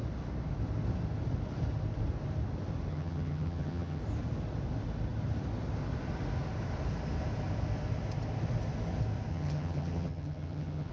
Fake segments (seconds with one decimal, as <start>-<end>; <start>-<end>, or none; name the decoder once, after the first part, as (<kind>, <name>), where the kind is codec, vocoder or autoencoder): 2.9-4.0 (vocoder, HiFi-GAN); 9.3-10.9